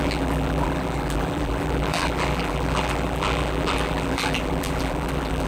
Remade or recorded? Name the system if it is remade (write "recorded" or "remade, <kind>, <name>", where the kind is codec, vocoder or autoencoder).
remade, vocoder, BigVGAN v2